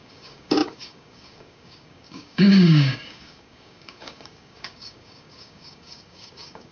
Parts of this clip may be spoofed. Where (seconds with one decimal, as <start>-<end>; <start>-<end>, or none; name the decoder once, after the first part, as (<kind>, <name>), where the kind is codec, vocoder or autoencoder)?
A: 0.0-6.7 (codec, DAC)